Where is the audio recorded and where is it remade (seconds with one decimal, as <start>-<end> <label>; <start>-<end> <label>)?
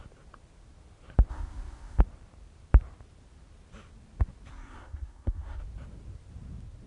0.0-1.3 recorded; 1.3-2.0 remade; 2.0-4.5 recorded; 4.5-5.6 remade; 5.6-6.9 recorded